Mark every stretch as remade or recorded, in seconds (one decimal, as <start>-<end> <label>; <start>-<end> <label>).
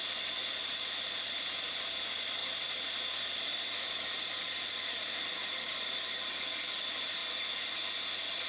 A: 0.0-0.5 recorded; 0.5-7.2 remade; 7.2-8.5 recorded